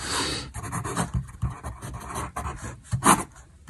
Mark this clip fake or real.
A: real